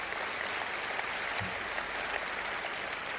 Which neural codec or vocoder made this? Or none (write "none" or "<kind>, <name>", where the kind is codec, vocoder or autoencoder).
none